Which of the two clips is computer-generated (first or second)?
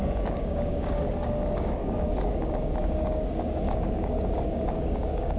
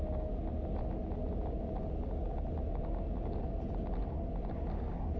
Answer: first